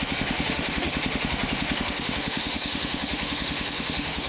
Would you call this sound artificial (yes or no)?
yes